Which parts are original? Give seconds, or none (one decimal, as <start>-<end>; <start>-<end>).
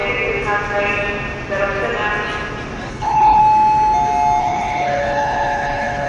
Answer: 0.0-2.9; 3.4-4.4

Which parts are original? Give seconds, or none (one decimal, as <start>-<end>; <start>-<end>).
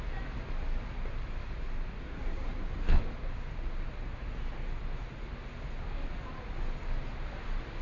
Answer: 0.0-2.0; 3.0-7.8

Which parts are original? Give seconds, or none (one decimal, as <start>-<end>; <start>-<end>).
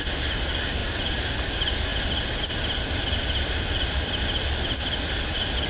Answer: 0.0-5.7